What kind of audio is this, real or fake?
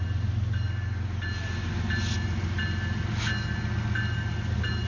real